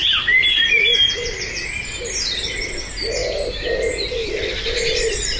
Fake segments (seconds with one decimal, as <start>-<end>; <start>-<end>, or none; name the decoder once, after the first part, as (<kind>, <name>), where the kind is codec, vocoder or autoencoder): 0.0-2.7 (vocoder, BigVGAN v2)